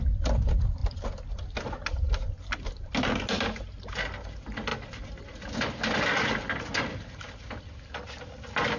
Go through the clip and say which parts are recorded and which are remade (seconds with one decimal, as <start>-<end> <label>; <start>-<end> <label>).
0.0-8.8 recorded

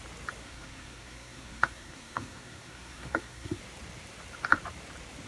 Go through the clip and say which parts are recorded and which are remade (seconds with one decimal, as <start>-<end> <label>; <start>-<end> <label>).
0.0-0.4 recorded; 0.4-3.6 remade; 3.6-5.3 recorded

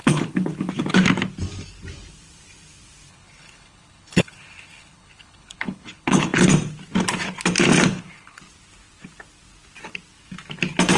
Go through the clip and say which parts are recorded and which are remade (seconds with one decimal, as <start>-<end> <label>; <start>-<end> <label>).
0.0-0.7 remade; 0.7-3.1 recorded; 3.1-6.5 remade; 6.5-7.9 recorded; 7.9-8.4 remade; 8.4-11.0 recorded